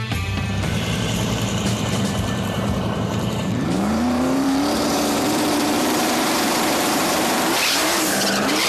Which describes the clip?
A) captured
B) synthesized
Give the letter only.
B